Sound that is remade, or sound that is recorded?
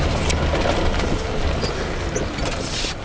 recorded